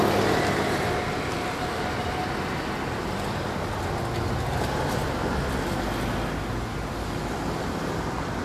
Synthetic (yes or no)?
no